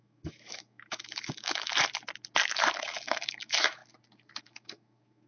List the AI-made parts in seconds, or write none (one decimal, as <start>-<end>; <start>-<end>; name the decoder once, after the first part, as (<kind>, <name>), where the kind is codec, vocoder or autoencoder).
0.0-1.7 (autoencoder, DAC-VAE); 2.8-3.8; 4.4-5.3